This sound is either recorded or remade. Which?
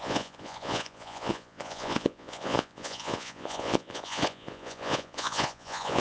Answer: remade